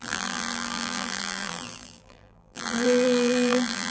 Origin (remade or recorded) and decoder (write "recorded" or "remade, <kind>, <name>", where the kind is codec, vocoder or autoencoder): remade, vocoder, BigVGAN v2